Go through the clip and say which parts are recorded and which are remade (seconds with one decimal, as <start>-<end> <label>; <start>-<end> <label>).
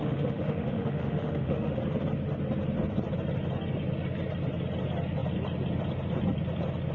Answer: 0.0-1.8 remade; 1.8-6.9 recorded